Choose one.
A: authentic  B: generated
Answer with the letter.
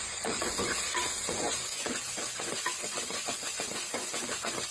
B